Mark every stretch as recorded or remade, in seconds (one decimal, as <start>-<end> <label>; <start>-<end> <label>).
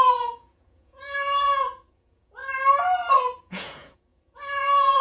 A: 0.0-2.4 remade; 2.4-3.2 recorded; 3.2-5.0 remade